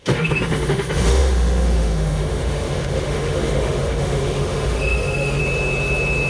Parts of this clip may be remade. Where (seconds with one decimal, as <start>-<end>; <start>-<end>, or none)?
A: 0.0-5.4